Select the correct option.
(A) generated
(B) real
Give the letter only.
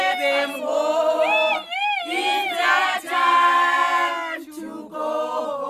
B